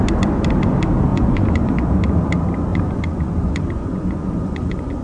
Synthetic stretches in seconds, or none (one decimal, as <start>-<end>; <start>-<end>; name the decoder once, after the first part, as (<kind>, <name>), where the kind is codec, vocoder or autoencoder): 1.1-1.9 (vocoder, Vocos); 2.7-5.0